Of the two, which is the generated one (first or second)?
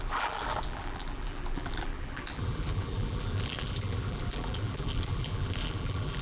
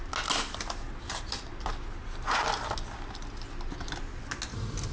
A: first